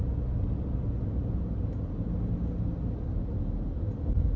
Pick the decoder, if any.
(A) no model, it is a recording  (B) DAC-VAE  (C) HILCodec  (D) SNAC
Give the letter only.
A